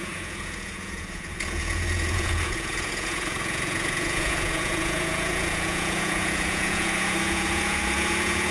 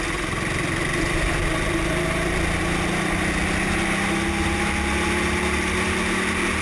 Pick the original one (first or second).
second